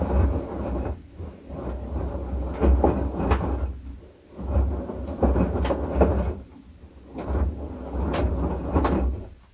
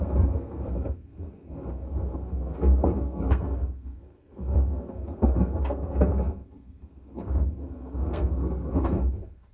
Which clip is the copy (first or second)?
second